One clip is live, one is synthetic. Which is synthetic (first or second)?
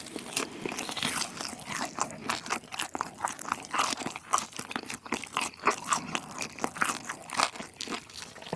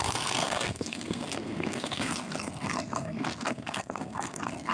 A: second